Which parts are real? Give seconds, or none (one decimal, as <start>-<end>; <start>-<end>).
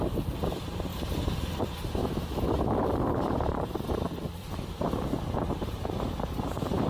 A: 2.0-2.8; 3.7-4.2